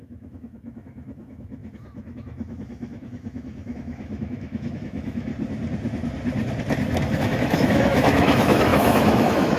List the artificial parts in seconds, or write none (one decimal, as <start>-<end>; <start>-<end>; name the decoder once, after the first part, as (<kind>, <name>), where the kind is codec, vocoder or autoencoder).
0.0-5.3 (autoencoder, DAC-VAE); 7.2-9.6